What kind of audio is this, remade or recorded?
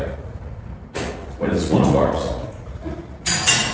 remade